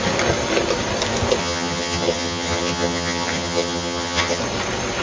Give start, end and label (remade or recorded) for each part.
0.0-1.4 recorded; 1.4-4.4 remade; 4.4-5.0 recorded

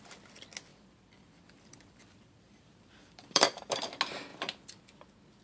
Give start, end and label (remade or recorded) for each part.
0.0-0.7 recorded; 0.7-3.9 remade; 3.9-4.3 recorded; 4.3-4.8 remade; 4.8-5.4 recorded